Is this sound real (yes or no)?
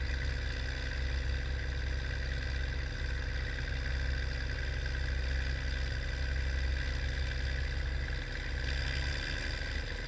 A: yes